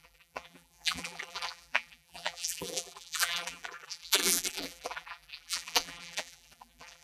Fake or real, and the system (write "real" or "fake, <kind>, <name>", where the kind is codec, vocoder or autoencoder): fake, vocoder, BigVGAN v2